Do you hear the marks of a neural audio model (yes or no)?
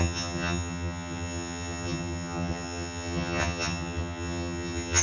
yes